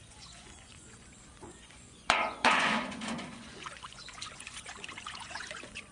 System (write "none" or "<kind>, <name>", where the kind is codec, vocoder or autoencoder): vocoder, Vocos